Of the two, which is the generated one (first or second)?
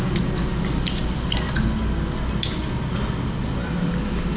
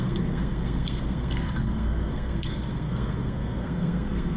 second